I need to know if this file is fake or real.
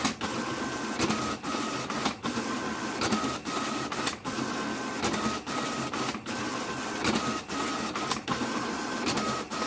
real